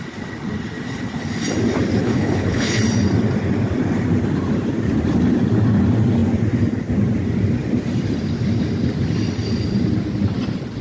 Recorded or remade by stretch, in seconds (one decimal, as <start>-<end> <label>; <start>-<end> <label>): 0.0-2.0 recorded; 2.0-2.8 remade; 2.8-10.8 recorded